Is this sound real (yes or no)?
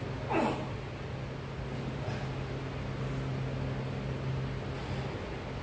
yes